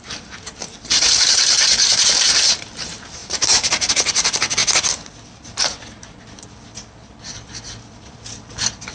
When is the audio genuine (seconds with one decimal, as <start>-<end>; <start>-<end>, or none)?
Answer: 4.6-8.9